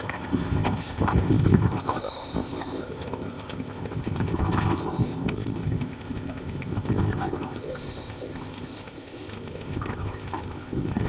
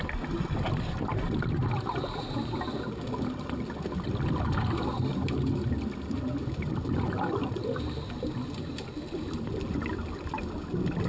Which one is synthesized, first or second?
first